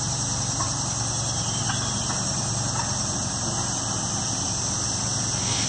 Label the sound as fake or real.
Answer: real